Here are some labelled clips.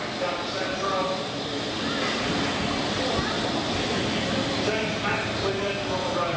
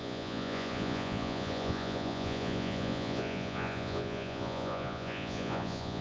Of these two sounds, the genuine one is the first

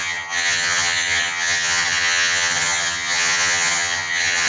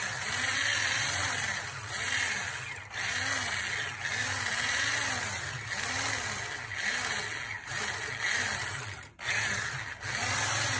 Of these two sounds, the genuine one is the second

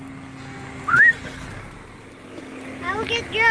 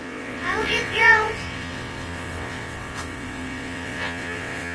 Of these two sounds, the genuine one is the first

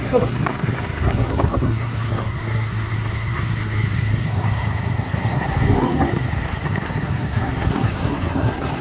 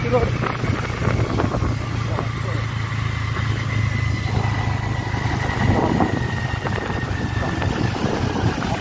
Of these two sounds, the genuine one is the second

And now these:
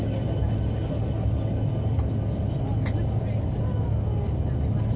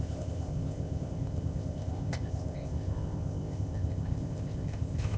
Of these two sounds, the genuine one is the first